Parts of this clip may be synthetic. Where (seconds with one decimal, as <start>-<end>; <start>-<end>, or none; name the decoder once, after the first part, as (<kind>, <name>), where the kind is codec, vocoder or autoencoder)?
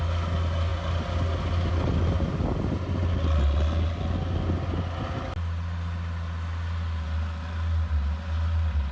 none